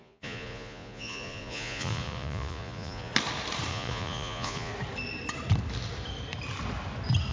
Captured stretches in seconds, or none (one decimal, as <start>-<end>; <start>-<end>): 3.1-3.7; 4.7-7.3